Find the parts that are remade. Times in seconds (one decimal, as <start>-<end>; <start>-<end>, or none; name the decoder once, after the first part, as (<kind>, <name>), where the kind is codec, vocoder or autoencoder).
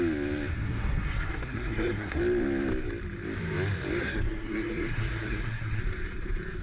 0.5-2.2 (codec, SNAC); 4.0-5.8